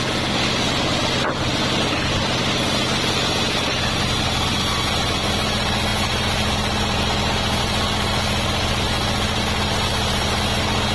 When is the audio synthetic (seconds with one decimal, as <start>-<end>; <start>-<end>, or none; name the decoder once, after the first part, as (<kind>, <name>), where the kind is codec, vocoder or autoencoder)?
none